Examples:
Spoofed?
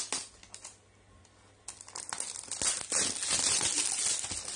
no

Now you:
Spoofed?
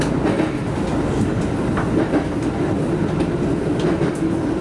no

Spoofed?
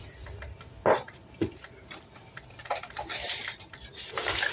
no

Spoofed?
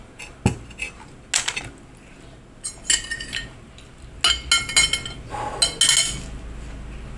no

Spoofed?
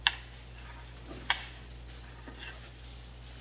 no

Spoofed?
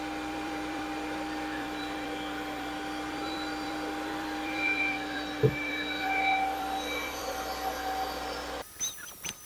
yes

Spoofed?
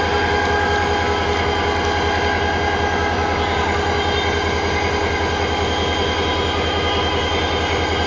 no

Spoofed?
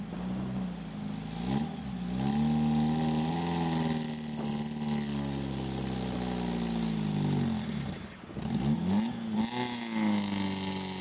no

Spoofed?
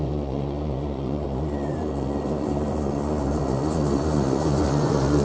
yes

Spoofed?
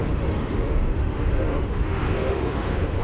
yes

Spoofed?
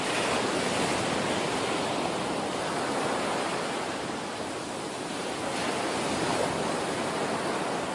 no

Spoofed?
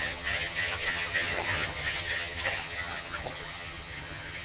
yes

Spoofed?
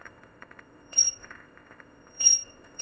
yes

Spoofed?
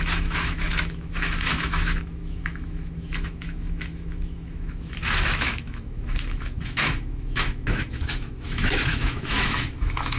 yes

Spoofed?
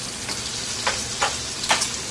no